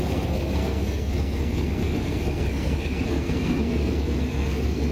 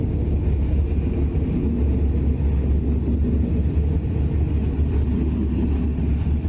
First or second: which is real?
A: second